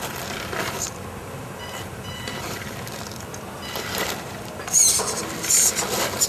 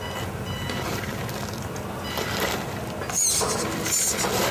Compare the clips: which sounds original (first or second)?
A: second